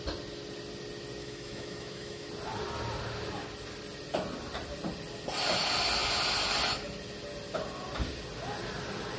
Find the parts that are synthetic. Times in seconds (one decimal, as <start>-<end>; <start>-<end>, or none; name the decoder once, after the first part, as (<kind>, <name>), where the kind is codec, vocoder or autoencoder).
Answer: 1.2-2.3 (autoencoder, DAC-VAE)